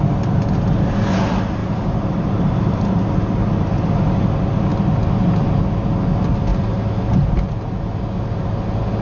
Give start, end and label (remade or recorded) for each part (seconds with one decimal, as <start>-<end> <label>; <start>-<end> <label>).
0.0-1.6 recorded; 1.6-2.7 remade; 2.7-9.0 recorded